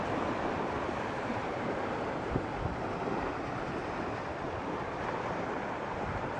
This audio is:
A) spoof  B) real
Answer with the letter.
A